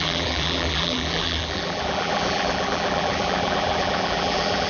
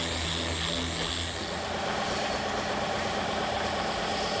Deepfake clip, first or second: first